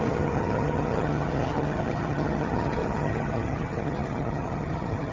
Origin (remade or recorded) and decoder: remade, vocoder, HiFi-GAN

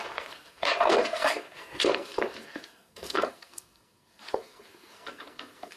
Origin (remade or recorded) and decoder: remade, codec, SNAC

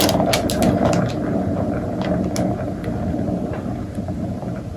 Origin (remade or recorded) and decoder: recorded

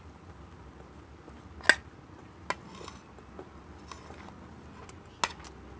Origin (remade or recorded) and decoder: recorded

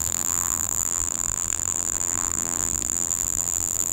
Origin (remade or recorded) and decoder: remade, vocoder, BigVGAN v2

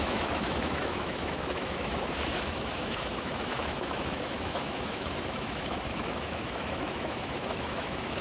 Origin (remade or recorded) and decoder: remade, autoencoder, DAC-VAE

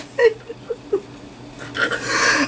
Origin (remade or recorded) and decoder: recorded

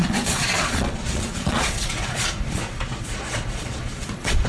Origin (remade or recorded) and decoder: remade, vocoder, Vocos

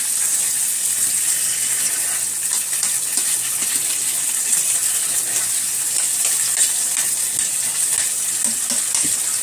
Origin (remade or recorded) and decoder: recorded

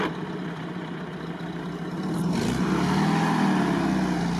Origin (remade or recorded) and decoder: recorded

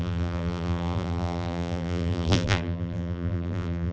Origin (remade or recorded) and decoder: remade, vocoder, BigVGAN v2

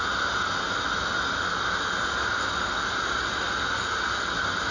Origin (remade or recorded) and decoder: recorded